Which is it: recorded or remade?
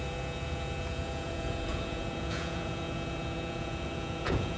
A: remade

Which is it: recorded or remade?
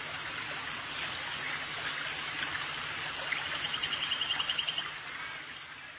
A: recorded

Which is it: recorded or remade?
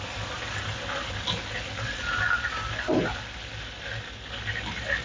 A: recorded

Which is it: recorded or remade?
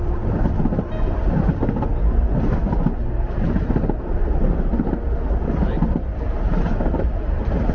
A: recorded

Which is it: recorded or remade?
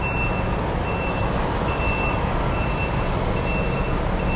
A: recorded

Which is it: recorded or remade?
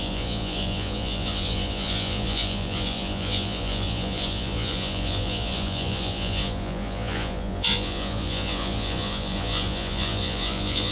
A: remade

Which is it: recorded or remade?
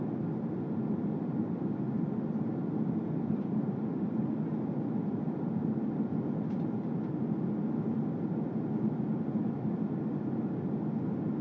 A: recorded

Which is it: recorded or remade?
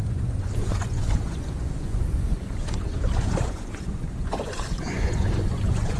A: remade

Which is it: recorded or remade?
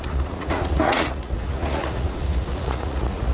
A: remade